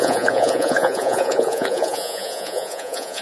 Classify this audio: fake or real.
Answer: fake